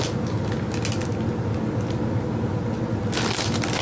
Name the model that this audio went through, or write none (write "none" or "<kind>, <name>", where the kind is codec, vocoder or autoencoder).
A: none